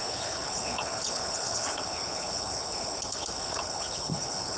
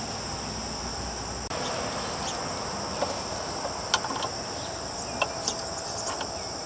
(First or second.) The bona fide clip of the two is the second